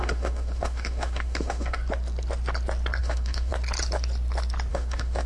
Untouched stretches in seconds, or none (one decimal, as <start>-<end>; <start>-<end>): 1.8-3.0; 3.5-4.7